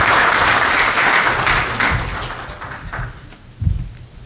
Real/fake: real